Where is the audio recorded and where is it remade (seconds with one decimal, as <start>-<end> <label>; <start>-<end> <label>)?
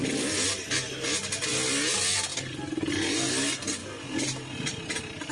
0.0-5.3 recorded